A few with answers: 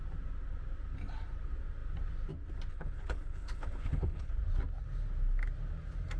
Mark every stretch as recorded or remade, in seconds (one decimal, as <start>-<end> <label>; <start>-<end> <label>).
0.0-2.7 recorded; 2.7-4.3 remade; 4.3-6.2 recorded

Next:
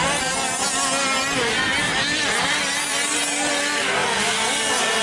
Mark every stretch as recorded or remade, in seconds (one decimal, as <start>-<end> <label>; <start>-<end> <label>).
0.0-5.0 recorded

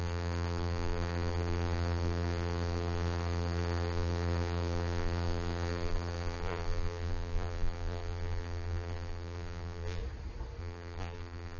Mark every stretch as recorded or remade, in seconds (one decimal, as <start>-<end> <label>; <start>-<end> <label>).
0.0-10.0 remade; 10.0-10.6 recorded; 10.6-11.6 remade

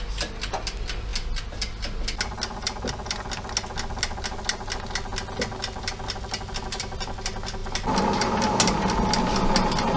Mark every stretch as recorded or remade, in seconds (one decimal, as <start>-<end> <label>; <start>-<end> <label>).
0.0-10.0 recorded

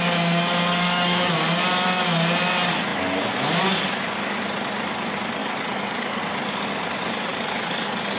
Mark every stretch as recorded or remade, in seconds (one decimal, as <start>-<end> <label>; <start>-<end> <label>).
0.0-0.7 recorded; 0.7-1.3 remade; 1.3-5.4 recorded; 5.4-6.2 remade; 6.2-7.3 recorded; 7.3-8.2 remade

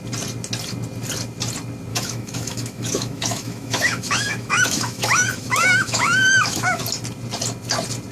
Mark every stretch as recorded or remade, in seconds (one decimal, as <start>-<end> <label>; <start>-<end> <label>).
0.0-1.9 recorded; 1.9-6.8 remade; 6.8-8.1 recorded

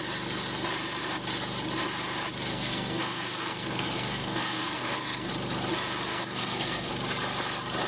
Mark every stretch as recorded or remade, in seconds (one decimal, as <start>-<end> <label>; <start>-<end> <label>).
0.0-2.5 recorded; 2.5-5.3 remade; 5.3-6.1 recorded; 6.1-6.9 remade; 6.9-7.9 recorded